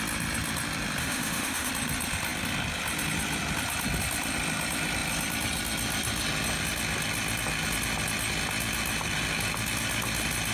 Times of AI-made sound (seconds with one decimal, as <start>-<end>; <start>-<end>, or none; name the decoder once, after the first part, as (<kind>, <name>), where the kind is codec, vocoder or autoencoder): 1.0-1.7 (autoencoder, DAC-VAE)